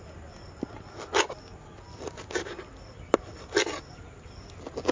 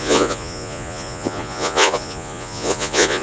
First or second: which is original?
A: first